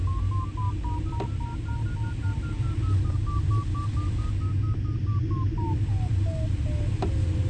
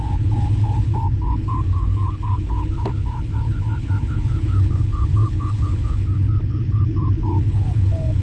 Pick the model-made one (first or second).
second